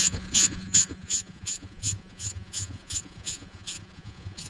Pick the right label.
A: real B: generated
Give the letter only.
B